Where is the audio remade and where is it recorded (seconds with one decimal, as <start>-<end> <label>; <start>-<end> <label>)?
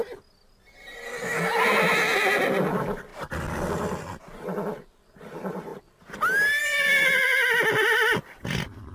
0.0-8.9 recorded